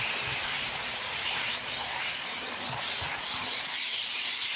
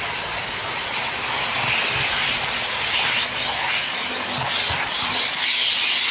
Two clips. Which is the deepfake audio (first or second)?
first